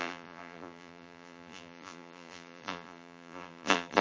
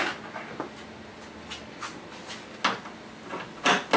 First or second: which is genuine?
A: second